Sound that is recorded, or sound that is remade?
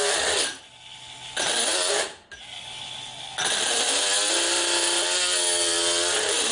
recorded